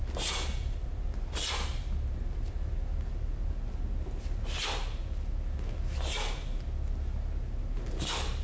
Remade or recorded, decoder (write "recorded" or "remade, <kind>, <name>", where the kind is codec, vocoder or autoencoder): recorded